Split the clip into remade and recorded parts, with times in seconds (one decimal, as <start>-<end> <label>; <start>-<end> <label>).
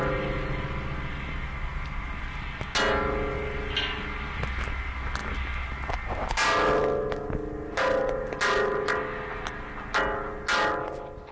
0.0-11.3 recorded